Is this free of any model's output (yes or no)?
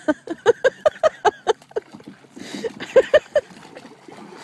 yes